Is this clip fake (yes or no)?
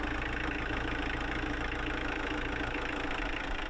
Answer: no